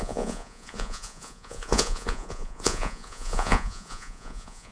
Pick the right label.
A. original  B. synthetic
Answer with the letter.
B